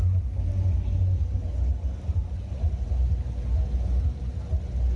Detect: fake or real real